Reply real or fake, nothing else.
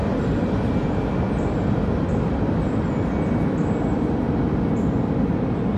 real